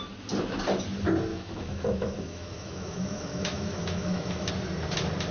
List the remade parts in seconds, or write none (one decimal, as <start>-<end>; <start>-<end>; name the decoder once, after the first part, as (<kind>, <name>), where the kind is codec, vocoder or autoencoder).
1.3-4.5 (autoencoder, DAC-VAE)